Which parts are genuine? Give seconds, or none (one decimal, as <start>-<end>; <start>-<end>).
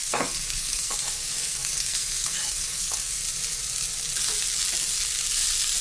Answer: 3.2-5.8